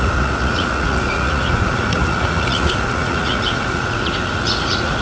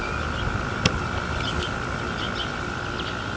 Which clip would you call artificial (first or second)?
first